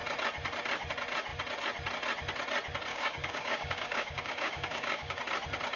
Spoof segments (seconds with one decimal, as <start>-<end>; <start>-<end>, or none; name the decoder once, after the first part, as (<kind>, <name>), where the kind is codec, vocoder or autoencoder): 2.9-5.2 (codec, DAC)